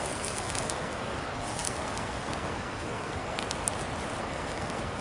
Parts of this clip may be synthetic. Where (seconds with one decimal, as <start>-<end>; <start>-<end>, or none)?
0.0-3.4; 4.2-5.0